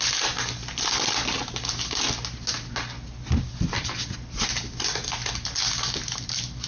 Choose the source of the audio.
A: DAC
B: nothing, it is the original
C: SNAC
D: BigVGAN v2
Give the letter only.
B